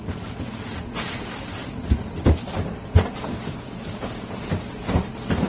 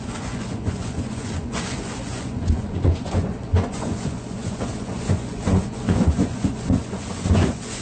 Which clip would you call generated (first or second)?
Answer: second